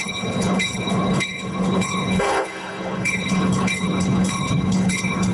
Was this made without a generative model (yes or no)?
no